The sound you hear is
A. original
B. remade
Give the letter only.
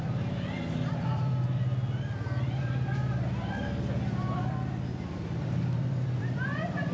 B